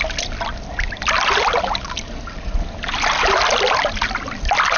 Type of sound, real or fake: real